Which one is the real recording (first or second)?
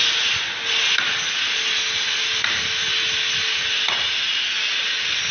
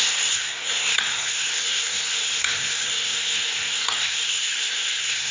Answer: first